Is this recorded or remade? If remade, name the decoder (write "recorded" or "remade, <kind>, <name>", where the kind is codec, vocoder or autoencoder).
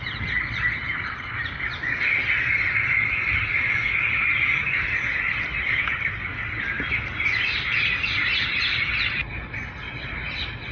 recorded